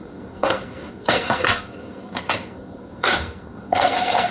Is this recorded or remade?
remade